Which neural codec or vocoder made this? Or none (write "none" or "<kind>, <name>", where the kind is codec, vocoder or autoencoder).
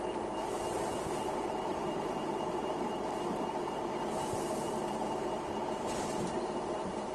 vocoder, BigVGAN v2